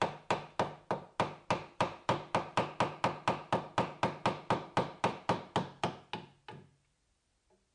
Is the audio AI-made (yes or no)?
no